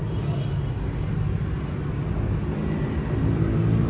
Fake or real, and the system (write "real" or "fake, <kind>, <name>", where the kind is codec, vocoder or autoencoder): real